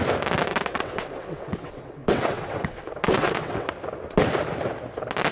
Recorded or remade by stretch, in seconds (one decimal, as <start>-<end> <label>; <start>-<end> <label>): 0.0-0.5 recorded; 0.5-3.7 remade; 3.7-5.3 recorded